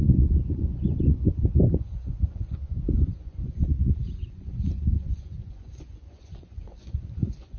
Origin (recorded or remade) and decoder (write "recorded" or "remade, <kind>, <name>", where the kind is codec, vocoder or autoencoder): remade, vocoder, Vocos